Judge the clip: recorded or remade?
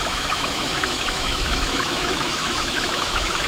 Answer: remade